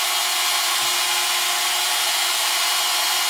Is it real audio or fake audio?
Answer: real